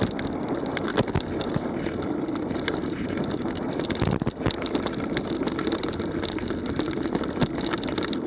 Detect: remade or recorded recorded